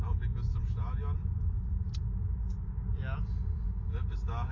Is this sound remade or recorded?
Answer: recorded